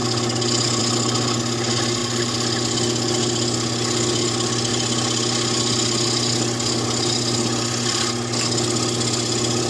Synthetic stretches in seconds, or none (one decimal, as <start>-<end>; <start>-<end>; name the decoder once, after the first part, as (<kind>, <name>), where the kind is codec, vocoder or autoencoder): 0.0-0.8 (vocoder, BigVGAN v2); 2.0-3.2